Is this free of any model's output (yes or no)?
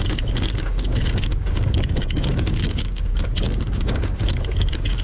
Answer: no